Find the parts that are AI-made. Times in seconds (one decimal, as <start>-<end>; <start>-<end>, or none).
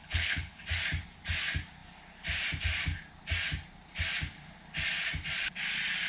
0.0-0.6